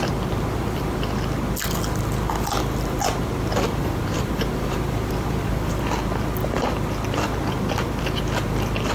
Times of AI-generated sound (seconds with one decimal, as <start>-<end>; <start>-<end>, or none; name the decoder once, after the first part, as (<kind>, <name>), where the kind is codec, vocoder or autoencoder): 3.8-5.8 (vocoder, BigVGAN v2)